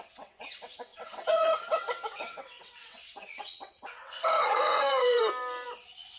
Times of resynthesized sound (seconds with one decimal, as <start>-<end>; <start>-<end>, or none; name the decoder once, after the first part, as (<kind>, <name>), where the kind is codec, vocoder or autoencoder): 0.0-5.2 (vocoder, WaveNeXt)